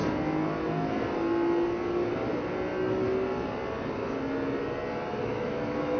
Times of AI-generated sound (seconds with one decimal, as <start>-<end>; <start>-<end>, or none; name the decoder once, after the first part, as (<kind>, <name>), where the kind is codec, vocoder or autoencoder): 5.2-6.0 (autoencoder, DAC-VAE)